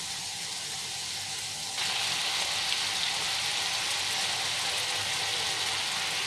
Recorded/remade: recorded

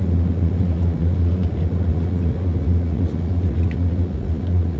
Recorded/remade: remade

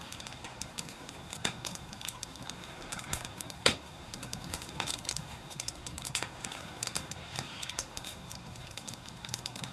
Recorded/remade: remade